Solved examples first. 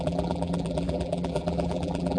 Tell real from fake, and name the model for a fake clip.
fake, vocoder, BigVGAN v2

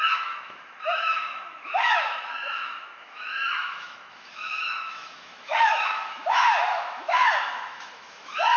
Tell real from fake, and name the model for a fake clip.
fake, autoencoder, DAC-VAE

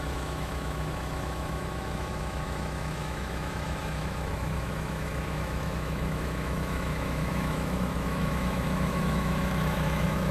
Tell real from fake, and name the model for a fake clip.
fake, autoencoder, DAC-VAE